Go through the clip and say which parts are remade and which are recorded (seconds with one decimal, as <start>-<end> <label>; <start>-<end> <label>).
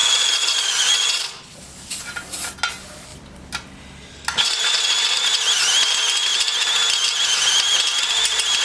0.0-1.6 remade; 1.6-8.6 recorded